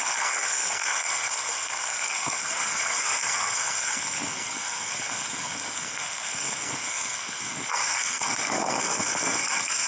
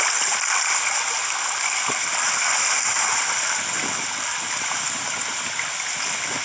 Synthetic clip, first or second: first